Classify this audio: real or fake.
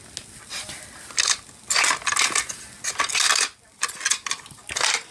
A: real